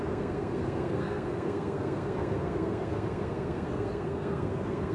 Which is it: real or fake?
fake